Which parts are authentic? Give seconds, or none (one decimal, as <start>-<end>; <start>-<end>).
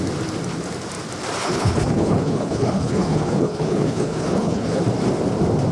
0.0-1.4; 4.8-5.7